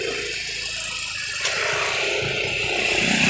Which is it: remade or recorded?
recorded